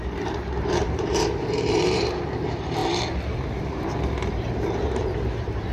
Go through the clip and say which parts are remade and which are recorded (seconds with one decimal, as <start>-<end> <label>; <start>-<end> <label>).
0.0-5.7 remade